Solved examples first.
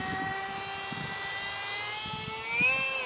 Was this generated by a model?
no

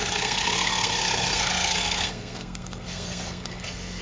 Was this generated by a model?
yes